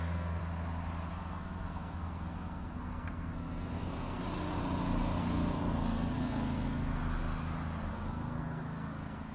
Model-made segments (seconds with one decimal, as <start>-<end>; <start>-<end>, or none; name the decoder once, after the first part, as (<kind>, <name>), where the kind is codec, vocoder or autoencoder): 0.0-0.4 (codec, SNAC); 1.1-4.2; 5.2-7.0; 7.9-9.3